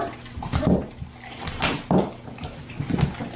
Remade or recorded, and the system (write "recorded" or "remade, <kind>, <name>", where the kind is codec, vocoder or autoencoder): recorded